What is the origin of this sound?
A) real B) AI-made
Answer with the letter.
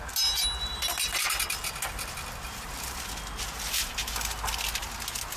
A